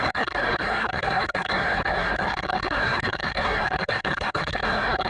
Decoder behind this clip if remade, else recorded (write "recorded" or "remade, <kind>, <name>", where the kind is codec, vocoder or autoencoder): remade, codec, SNAC